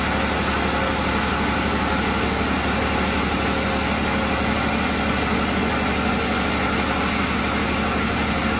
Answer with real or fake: real